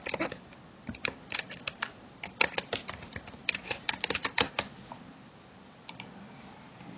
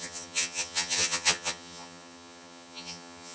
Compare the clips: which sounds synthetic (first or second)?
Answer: second